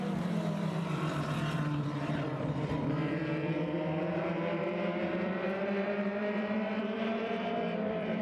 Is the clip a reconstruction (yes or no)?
yes